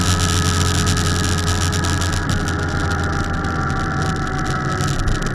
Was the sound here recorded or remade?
recorded